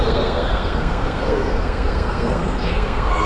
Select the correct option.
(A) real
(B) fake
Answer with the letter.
B